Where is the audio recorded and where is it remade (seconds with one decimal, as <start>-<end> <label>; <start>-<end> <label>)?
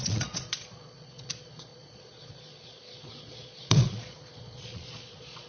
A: 0.0-5.5 remade